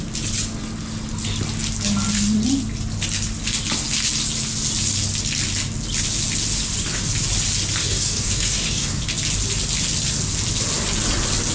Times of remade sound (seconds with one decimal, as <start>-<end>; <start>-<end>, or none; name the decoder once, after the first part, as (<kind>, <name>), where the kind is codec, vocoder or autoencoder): 7.8-9.0 (codec, DAC)